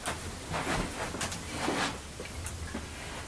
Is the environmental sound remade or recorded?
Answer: recorded